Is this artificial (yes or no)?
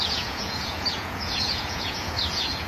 yes